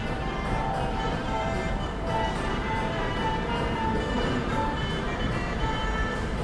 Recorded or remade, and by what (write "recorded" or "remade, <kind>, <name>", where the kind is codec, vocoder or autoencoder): remade, vocoder, BigVGAN v2